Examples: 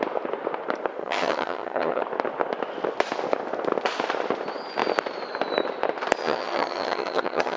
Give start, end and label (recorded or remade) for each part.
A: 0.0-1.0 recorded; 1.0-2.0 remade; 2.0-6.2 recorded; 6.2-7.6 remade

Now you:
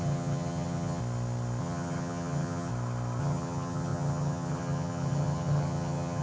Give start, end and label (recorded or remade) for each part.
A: 0.0-1.0 remade; 1.0-1.6 recorded; 1.6-2.7 remade; 2.7-3.2 recorded; 3.2-6.2 remade

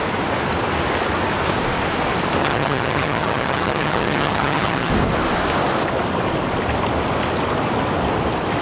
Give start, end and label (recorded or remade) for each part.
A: 0.0-2.4 recorded; 2.4-4.9 remade; 4.9-8.6 recorded